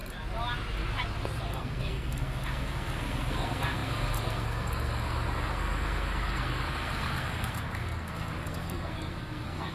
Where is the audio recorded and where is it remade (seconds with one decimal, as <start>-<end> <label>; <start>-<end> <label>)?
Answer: 0.0-1.5 recorded; 1.5-9.7 remade